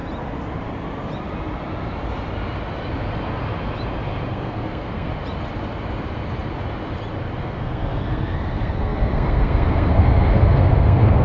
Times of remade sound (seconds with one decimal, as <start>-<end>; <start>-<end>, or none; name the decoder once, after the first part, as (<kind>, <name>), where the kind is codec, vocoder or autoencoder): 4.3-5.1 (codec, SNAC); 7.4-11.2